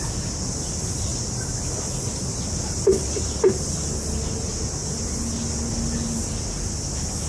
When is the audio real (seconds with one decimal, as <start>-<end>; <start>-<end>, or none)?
0.0-4.8; 5.7-7.3